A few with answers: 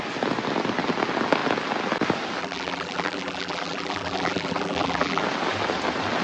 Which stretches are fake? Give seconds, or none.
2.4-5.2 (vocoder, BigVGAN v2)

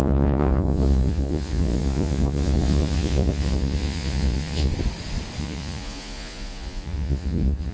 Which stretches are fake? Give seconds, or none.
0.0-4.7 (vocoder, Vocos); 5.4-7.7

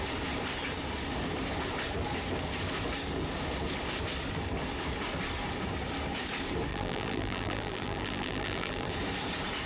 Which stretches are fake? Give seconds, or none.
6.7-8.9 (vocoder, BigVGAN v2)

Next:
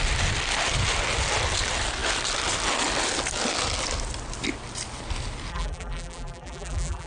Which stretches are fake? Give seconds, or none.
5.5-7.1 (vocoder, BigVGAN v2)

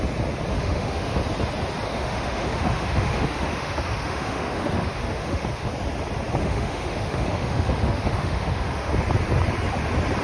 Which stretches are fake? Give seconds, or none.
0.5-1.2 (autoencoder, DAC-VAE); 1.9-5.7; 6.4-8.9

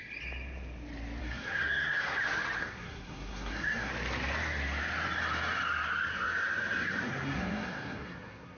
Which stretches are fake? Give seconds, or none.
1.2-2.2 (codec, SNAC); 2.6-3.9; 6.1-8.6

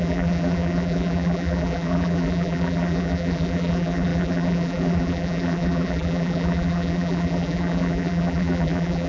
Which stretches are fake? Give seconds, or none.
0.0-9.1 (vocoder, BigVGAN v2)